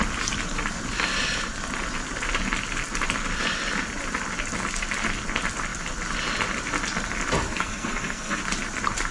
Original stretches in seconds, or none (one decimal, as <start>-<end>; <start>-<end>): 0.0-7.4; 8.4-9.1